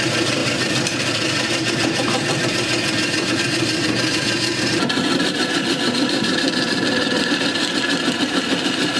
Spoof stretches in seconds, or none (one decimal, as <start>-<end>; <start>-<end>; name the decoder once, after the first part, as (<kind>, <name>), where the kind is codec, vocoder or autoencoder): 0.0-9.0 (vocoder, BigVGAN v2)